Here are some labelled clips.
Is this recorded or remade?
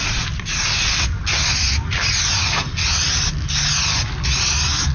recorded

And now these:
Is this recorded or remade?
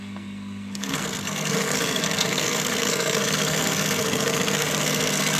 remade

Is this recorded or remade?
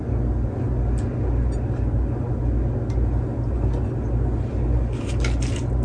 recorded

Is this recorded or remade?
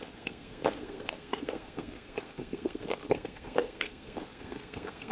remade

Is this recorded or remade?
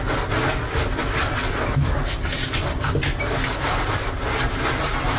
recorded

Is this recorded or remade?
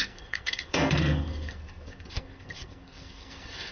remade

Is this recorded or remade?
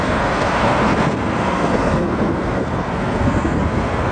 remade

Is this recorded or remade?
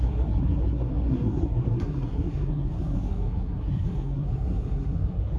remade